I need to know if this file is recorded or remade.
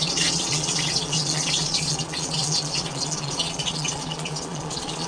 remade